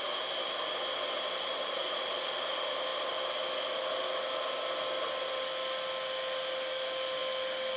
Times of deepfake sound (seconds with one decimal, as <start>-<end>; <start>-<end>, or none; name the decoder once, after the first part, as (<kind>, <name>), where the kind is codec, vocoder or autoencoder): none